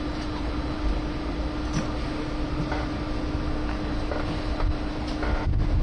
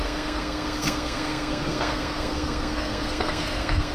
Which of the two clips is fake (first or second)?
second